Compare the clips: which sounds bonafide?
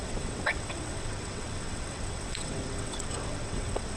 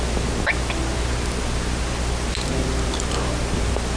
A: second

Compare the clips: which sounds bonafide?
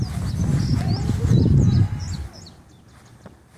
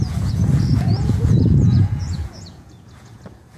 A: first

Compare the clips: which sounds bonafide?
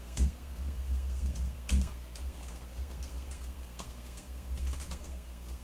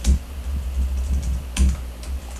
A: second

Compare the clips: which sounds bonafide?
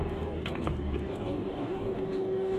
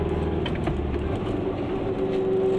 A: second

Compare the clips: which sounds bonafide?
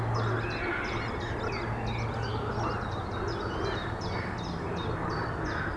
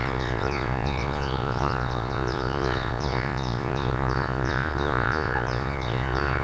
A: first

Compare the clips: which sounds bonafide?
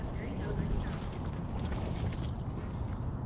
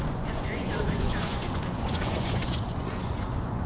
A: first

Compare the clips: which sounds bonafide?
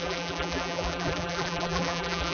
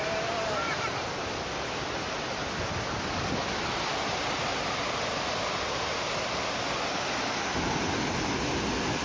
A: second